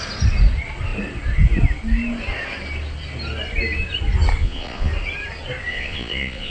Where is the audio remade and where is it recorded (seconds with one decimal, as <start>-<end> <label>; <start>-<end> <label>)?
0.0-4.4 recorded; 4.4-4.9 remade; 4.9-5.7 recorded; 5.7-6.5 remade